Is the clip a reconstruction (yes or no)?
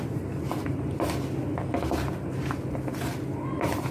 no